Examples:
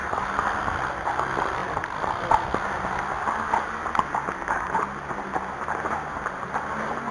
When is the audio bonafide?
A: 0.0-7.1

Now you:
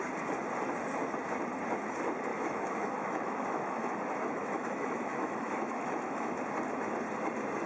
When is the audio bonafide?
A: 0.0-2.3; 6.3-7.7

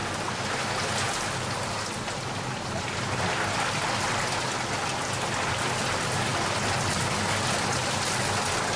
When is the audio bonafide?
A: 0.0-8.8

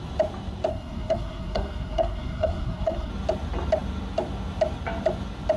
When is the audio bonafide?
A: 0.0-0.7; 3.1-5.6

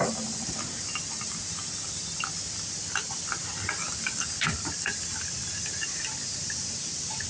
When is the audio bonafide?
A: 0.0-7.3

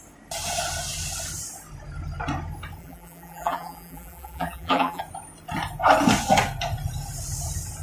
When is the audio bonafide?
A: 0.0-2.8; 5.0-7.8

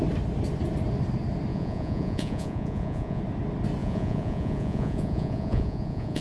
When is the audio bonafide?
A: 0.0-1.5; 3.2-3.8

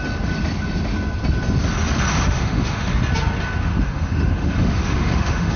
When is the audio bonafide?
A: 0.0-2.1; 3.0-3.7